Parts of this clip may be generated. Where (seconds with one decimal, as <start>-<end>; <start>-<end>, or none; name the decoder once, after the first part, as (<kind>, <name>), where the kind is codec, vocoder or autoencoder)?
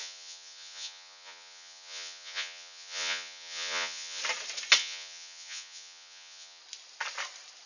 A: 0.0-4.2 (vocoder, Vocos); 4.8-6.6